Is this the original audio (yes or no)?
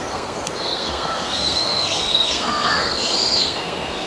no